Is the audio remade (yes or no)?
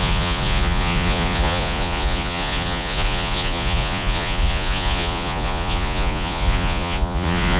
yes